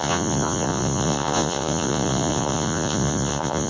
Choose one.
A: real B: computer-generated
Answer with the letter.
B